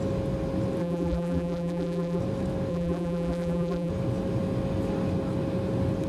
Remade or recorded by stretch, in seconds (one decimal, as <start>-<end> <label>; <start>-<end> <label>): 0.0-0.8 recorded; 0.8-2.2 remade; 2.2-2.7 recorded; 2.7-3.9 remade; 3.9-6.1 recorded